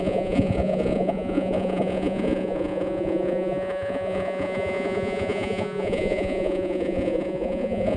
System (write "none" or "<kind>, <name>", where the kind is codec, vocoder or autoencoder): vocoder, Vocos